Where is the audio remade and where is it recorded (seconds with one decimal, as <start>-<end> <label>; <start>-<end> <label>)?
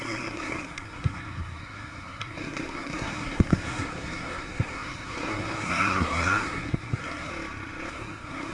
0.0-7.3 remade; 7.3-7.9 recorded; 7.9-8.5 remade